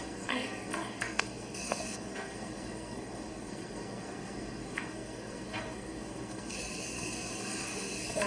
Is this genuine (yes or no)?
no